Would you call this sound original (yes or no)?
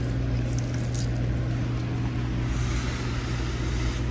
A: yes